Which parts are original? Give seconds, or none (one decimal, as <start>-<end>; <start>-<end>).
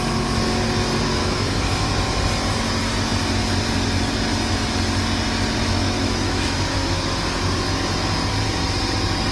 0.0-1.2; 1.9-5.8; 7.2-9.3